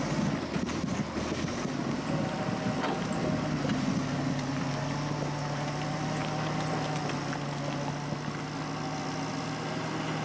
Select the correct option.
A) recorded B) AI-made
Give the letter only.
A